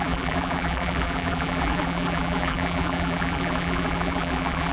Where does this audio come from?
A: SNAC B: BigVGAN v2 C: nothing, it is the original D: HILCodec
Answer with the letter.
B